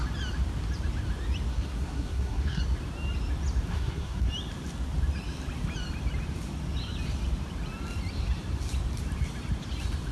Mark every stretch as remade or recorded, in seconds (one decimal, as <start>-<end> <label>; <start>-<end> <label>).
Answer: 0.0-1.5 recorded; 1.5-2.6 remade; 2.6-3.7 recorded; 3.7-4.3 remade; 4.3-10.1 recorded